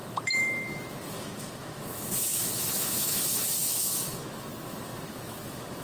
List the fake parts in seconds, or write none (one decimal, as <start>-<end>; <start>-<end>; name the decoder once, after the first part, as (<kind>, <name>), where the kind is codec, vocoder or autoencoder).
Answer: 0.0-5.8 (autoencoder, DAC-VAE)